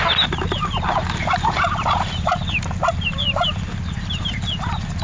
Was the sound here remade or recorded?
remade